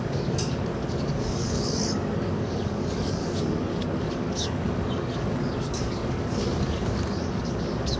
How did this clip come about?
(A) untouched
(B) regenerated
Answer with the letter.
B